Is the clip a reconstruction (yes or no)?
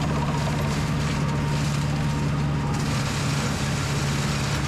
no